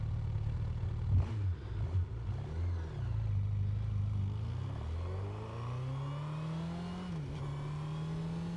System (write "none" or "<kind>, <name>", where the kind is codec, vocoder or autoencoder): none